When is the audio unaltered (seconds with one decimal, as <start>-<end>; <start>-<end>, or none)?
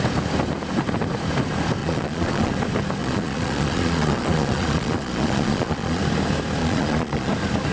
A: 0.0-1.8; 2.5-3.0; 6.0-6.6; 7.3-7.7